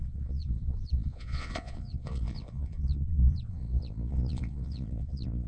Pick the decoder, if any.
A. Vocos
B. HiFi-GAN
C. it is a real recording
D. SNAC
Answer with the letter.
A